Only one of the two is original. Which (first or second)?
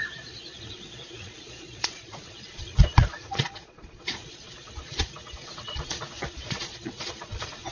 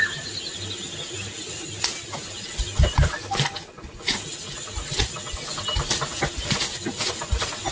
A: second